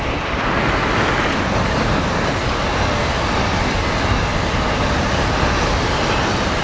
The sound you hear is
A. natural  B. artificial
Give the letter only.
A